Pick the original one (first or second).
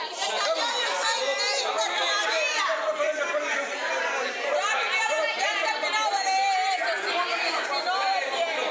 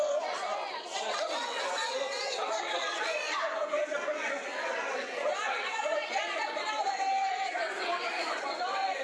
first